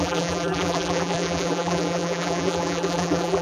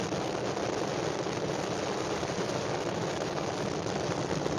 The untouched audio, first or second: second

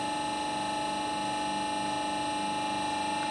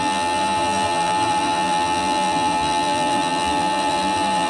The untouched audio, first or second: first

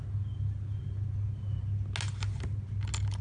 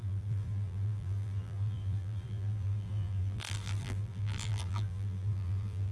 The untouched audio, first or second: first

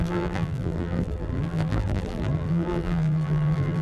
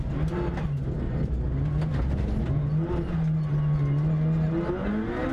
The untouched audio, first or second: second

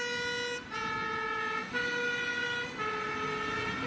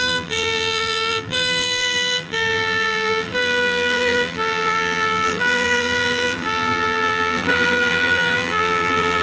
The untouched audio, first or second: first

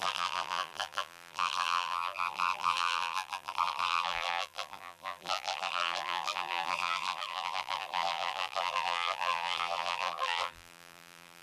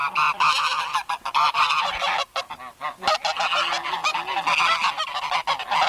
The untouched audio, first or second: second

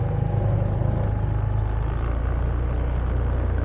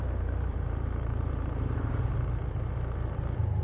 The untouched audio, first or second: first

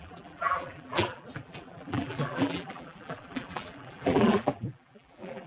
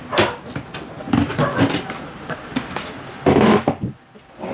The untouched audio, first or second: second